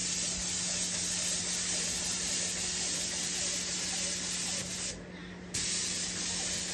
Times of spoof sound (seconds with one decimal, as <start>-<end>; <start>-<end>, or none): none